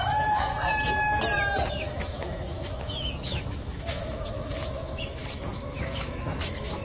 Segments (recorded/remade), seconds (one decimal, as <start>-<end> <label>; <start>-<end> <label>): 0.0-0.5 remade; 0.5-1.7 recorded; 1.7-6.8 remade